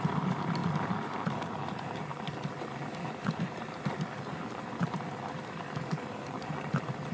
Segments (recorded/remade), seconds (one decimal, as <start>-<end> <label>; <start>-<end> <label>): 0.0-7.1 remade